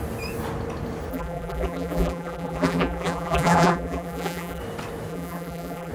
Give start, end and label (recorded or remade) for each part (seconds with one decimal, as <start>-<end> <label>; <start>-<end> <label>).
0.0-1.1 recorded; 1.1-4.6 remade; 4.6-5.1 recorded; 5.1-5.9 remade